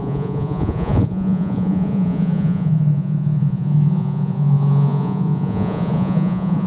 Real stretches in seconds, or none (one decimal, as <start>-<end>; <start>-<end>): none